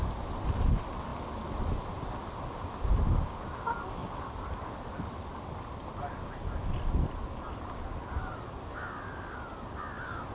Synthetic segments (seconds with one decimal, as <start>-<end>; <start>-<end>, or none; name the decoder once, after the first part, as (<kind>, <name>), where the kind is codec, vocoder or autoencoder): none